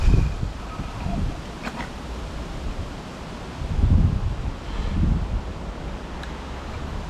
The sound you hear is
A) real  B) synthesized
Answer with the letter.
A